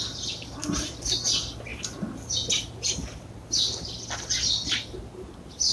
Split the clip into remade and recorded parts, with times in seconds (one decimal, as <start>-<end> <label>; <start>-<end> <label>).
0.0-5.7 recorded